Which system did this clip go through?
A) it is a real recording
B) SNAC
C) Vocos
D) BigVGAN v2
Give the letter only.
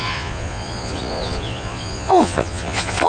C